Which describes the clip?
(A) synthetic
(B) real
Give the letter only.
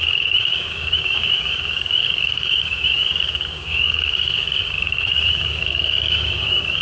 A